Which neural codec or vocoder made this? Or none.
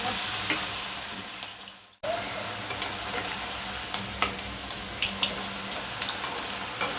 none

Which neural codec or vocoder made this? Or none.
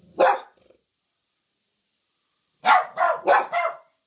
none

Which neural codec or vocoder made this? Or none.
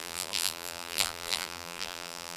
vocoder, BigVGAN v2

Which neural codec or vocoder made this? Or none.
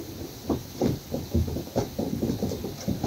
none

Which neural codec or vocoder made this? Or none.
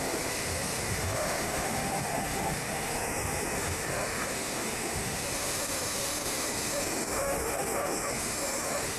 autoencoder, DAC-VAE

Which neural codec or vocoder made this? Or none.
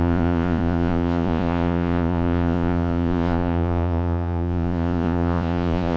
vocoder, Vocos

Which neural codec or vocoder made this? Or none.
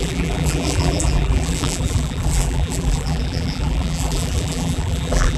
vocoder, BigVGAN v2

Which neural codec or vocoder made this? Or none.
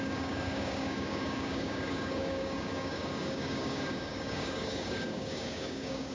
codec, DAC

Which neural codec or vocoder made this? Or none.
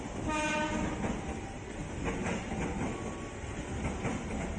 none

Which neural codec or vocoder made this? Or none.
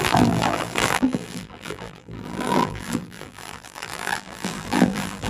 vocoder, BigVGAN v2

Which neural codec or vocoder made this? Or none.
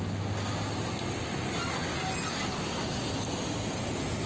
none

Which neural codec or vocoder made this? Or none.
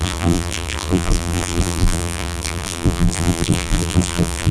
vocoder, BigVGAN v2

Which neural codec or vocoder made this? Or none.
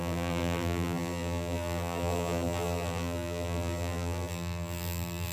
vocoder, BigVGAN v2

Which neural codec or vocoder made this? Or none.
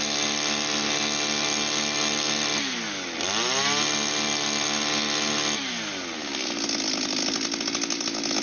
none